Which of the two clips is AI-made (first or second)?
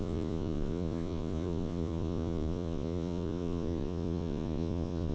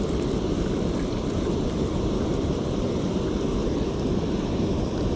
first